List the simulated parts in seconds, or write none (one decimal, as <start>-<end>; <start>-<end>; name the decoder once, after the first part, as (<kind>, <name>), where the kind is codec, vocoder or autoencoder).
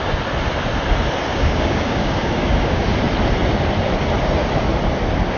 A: 1.3-2.8 (codec, DAC)